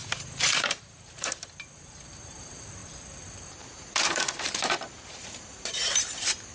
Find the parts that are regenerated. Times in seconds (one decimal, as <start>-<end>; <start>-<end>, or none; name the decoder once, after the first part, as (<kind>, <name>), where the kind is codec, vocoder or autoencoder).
0.0-2.8 (vocoder, BigVGAN v2); 3.6-6.5